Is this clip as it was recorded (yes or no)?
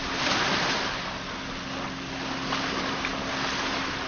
yes